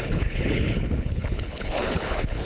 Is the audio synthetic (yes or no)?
yes